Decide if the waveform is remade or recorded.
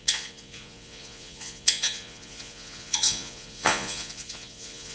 remade